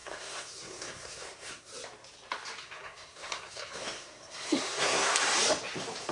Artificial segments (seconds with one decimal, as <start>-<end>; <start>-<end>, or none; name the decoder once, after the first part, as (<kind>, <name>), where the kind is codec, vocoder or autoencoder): 0.0-1.7 (codec, SNAC); 2.6-5.1